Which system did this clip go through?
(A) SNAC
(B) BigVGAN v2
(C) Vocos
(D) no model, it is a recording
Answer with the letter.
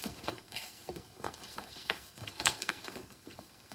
A